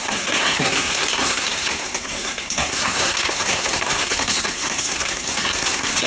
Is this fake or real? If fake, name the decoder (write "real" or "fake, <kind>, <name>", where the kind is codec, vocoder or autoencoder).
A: fake, codec, SNAC